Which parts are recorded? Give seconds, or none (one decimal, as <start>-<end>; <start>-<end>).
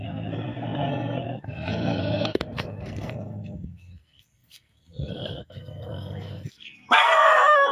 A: none